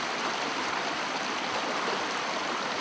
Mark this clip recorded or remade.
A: recorded